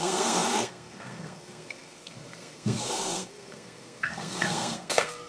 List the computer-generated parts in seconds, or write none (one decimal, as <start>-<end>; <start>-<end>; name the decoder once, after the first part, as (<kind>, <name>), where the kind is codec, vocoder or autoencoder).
0.0-5.3 (codec, SNAC)